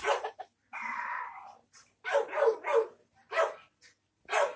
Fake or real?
real